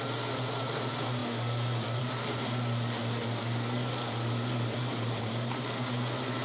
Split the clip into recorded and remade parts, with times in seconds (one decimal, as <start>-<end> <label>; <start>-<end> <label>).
0.0-4.8 recorded; 4.8-5.6 remade; 5.6-6.4 recorded